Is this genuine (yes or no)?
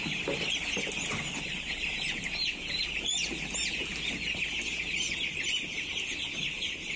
yes